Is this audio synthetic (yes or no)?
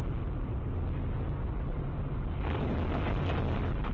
no